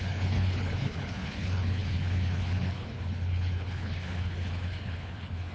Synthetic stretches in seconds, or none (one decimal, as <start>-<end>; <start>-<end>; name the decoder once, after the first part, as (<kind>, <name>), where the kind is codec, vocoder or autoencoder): 0.0-5.5 (codec, HILCodec)